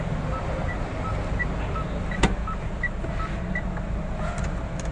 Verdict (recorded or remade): recorded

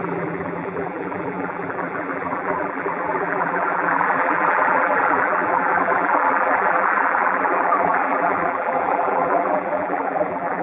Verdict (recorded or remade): remade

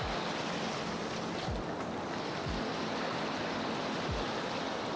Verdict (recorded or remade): recorded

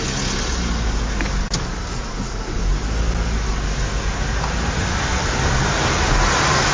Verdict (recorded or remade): recorded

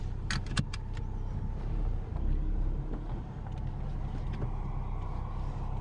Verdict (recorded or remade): recorded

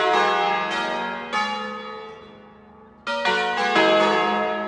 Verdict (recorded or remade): recorded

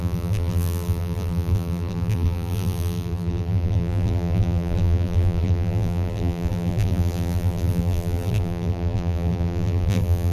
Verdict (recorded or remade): remade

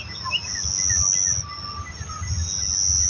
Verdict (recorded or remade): recorded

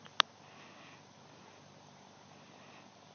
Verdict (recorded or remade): recorded